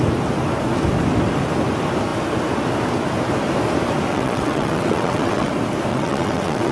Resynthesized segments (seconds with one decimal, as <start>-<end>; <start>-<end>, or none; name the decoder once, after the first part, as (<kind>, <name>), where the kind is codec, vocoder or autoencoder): 4.1-5.5 (vocoder, WaveNeXt); 5.9-6.7